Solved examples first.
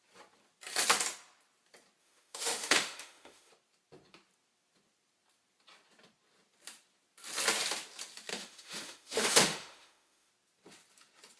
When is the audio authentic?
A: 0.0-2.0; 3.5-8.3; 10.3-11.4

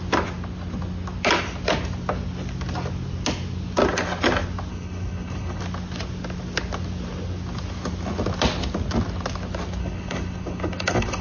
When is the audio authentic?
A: 0.0-4.7; 5.6-9.8

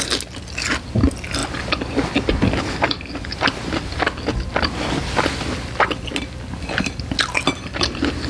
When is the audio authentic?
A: 0.0-8.3